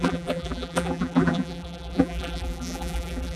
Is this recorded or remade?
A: remade